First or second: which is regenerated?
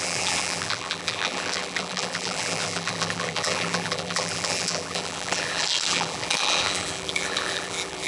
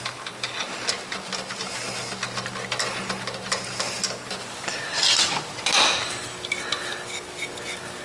first